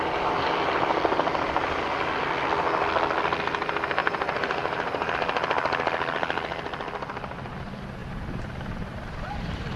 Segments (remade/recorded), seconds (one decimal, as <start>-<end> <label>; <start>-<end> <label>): 0.0-4.0 recorded; 4.0-5.1 remade; 5.1-8.0 recorded; 8.0-9.8 remade